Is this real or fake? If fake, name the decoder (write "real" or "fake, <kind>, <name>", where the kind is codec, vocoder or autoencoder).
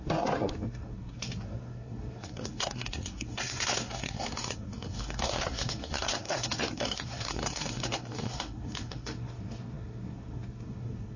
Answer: fake, codec, SNAC